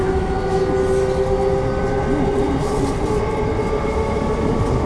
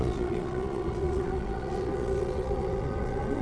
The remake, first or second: second